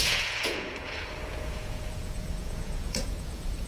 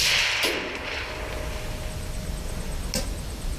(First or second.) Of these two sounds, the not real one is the first